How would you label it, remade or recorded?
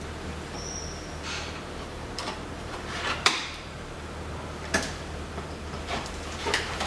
remade